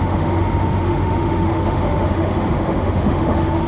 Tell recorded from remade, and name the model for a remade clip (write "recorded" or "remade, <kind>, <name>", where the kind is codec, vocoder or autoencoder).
remade, autoencoder, DAC-VAE